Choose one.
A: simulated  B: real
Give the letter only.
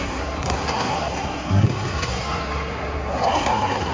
A